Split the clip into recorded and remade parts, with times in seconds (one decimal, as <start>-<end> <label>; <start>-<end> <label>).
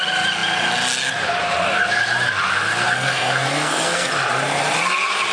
0.0-2.8 recorded; 2.8-4.1 remade; 4.1-5.3 recorded